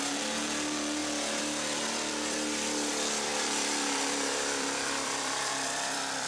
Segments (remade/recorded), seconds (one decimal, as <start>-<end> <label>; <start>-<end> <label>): 0.0-1.0 recorded; 1.0-2.9 remade; 2.9-3.3 recorded; 3.3-6.3 remade